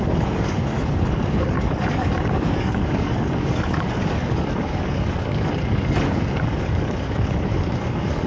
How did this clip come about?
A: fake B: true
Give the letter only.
A